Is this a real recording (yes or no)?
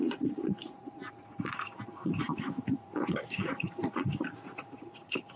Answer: no